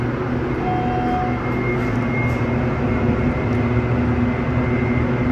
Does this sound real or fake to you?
real